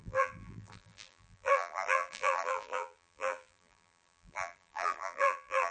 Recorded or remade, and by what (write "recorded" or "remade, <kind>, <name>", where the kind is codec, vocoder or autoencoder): remade, vocoder, BigVGAN v2